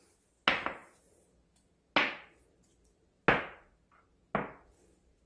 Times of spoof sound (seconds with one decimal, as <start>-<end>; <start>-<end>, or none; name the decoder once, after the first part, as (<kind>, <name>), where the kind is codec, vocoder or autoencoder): none